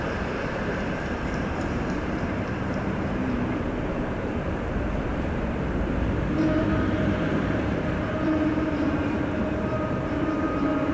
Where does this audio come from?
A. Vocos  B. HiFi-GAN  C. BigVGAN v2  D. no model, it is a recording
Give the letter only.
C